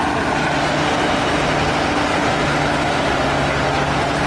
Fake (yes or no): no